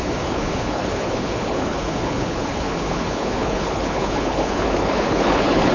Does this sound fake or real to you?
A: fake